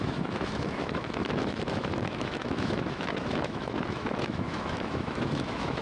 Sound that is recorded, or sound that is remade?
remade